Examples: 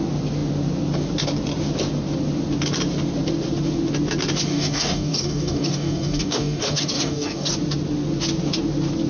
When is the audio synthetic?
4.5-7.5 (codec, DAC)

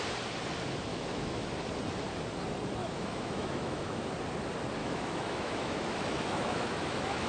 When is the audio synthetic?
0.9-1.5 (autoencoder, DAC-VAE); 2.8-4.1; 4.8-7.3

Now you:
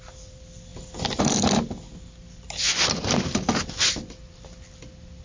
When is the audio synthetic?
none